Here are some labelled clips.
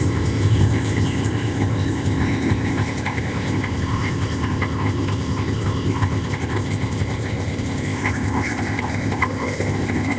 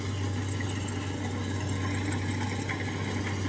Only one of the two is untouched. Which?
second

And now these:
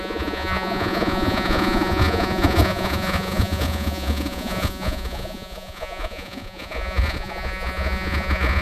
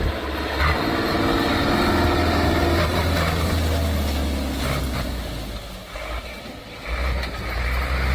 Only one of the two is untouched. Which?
second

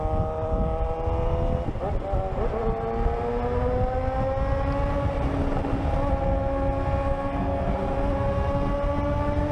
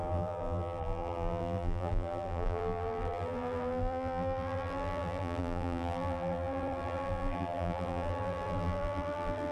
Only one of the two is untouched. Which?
first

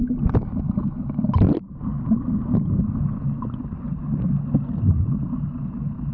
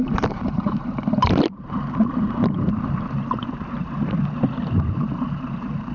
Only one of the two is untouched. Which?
first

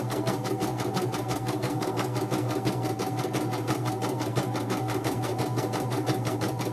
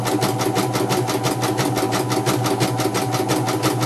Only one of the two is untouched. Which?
second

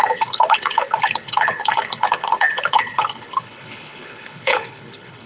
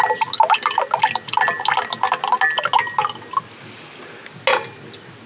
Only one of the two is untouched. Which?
second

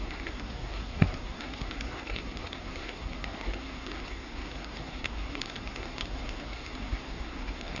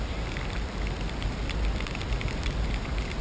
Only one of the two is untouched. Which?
second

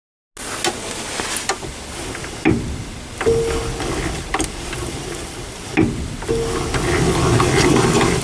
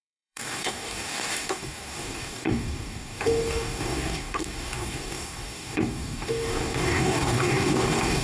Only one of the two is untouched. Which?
first